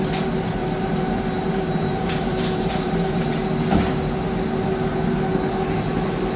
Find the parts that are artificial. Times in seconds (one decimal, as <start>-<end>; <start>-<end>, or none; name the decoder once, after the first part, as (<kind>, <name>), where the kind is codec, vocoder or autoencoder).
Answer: 0.6-3.3 (vocoder, BigVGAN v2)